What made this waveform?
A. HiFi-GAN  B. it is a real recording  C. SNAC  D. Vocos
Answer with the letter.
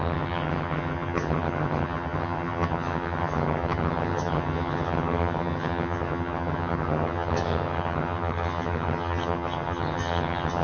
A